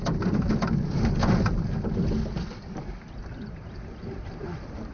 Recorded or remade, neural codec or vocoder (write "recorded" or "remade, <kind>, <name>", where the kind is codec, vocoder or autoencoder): recorded